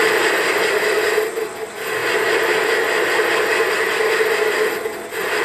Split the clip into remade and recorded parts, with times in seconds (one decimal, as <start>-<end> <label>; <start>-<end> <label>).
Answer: 0.0-5.4 recorded